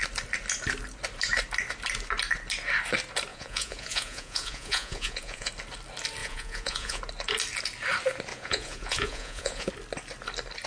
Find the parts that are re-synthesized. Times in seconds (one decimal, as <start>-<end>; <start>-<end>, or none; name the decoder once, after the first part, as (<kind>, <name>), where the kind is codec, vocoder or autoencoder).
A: 3.3-5.5 (vocoder, Vocos); 6.2-7.0; 8.3-9.7